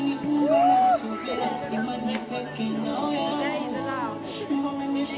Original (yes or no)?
yes